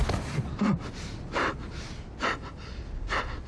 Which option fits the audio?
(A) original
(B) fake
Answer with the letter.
A